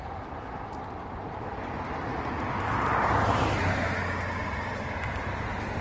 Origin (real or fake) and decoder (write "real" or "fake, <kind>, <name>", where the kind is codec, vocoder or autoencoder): real